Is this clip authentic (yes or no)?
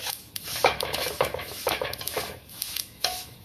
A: no